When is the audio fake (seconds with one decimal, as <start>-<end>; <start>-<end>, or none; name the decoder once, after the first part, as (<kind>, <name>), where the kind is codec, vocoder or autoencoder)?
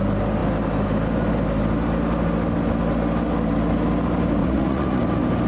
4.4-5.0 (vocoder, Vocos)